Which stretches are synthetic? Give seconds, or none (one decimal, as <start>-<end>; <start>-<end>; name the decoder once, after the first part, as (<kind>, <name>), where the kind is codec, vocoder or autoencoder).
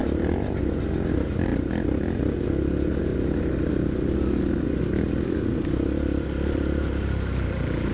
0.0-0.8 (vocoder, BigVGAN v2); 1.5-2.2; 3.1-7.9